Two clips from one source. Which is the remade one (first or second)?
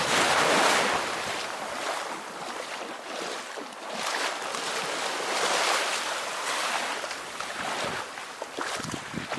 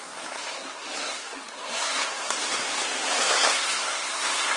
second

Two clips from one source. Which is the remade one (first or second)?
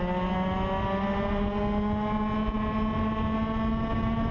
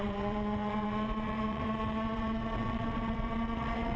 second